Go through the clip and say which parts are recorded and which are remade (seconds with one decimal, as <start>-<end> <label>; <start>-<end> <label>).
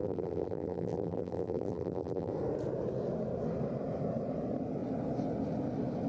0.0-2.3 remade; 2.3-6.1 recorded